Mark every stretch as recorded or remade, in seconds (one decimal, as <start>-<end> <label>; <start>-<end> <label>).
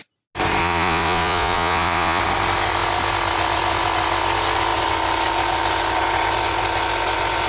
0.0-0.6 recorded; 0.6-2.2 remade; 2.2-7.5 recorded